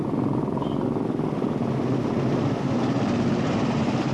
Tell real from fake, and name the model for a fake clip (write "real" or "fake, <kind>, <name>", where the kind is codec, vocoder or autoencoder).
fake, vocoder, BigVGAN v2